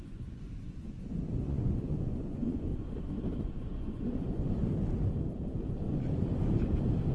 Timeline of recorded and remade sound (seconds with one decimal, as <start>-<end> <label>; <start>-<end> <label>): 0.0-2.7 remade; 2.7-3.4 recorded; 3.4-4.4 remade; 4.4-7.1 recorded